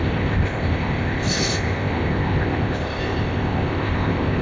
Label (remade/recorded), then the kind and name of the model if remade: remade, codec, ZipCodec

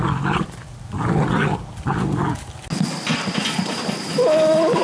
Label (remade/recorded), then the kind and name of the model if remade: recorded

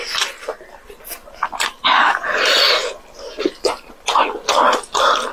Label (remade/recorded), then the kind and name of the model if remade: recorded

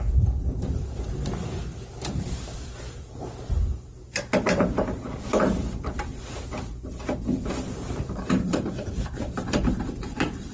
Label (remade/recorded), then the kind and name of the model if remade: remade, vocoder, BigVGAN v2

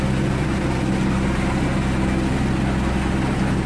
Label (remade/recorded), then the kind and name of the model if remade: recorded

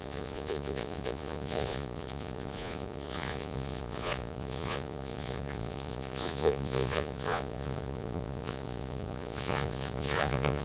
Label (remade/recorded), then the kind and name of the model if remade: remade, vocoder, Vocos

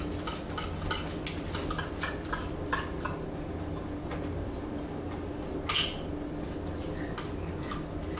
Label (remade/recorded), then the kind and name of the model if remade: recorded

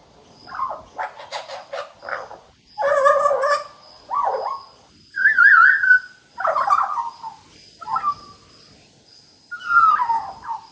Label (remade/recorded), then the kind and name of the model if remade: recorded